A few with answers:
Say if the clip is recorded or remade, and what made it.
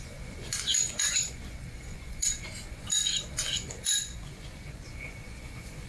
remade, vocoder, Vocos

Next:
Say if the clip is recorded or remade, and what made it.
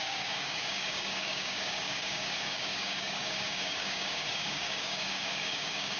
remade, codec, DAC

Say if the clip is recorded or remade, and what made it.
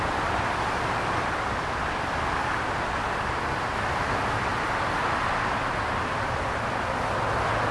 recorded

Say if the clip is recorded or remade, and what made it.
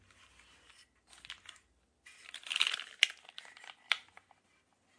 recorded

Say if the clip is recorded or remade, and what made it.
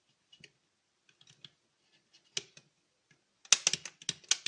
recorded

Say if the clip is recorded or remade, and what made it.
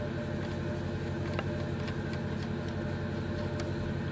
recorded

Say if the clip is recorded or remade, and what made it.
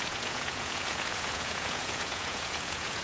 remade, vocoder, Vocos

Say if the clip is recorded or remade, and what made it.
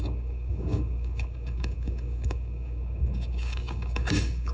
remade, codec, DAC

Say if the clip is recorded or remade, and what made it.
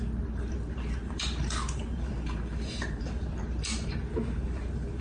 remade, vocoder, BigVGAN v2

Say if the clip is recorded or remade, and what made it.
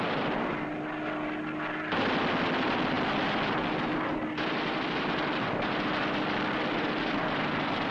recorded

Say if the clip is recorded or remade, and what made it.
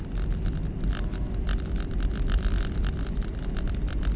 remade, vocoder, BigVGAN v2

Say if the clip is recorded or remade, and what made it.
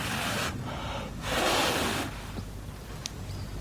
recorded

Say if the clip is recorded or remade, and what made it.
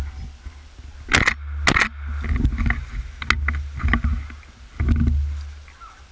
recorded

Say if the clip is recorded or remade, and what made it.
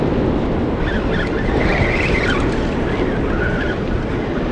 recorded